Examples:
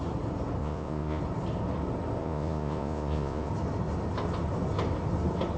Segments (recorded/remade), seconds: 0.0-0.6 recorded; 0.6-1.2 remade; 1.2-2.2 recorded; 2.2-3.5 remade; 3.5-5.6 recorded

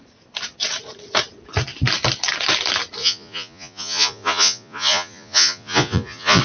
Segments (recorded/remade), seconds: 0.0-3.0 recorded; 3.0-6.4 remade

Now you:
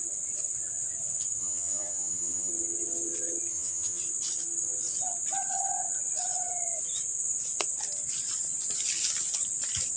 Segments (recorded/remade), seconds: 0.0-1.4 recorded; 1.4-2.5 remade; 2.5-3.5 recorded; 3.5-4.0 remade; 4.0-10.0 recorded

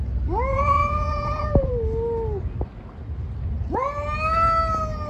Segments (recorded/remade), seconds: 0.0-0.5 recorded; 0.5-1.7 remade; 1.7-5.1 recorded

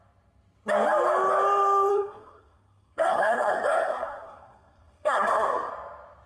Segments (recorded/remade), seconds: 0.0-1.9 recorded; 1.9-5.7 remade; 5.7-6.3 recorded

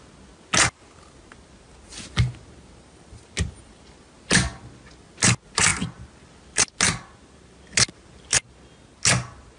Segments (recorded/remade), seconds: 0.0-9.6 recorded

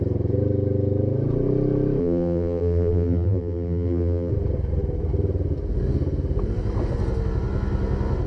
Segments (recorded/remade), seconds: 0.0-2.0 recorded; 2.0-4.3 remade; 4.3-8.3 recorded